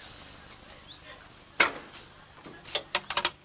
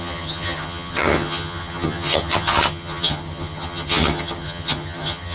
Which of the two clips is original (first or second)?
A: first